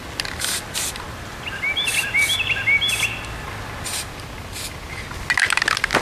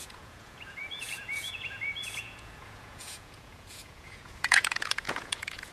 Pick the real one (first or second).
first